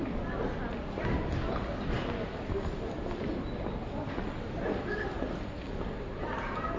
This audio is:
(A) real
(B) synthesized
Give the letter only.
A